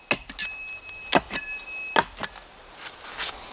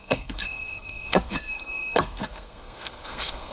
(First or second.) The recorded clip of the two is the first